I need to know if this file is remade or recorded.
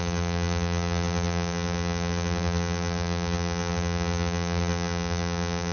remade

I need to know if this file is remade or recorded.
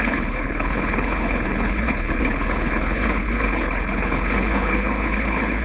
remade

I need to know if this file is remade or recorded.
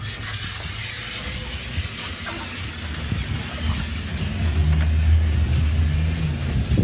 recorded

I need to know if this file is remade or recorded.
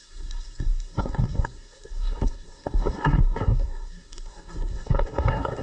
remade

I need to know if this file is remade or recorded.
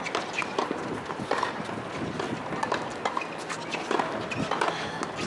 recorded